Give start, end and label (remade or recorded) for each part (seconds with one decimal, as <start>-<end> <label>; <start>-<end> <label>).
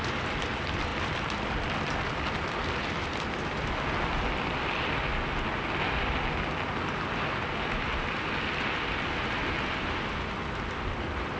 0.0-11.4 recorded